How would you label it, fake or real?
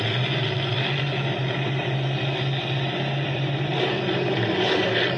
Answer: real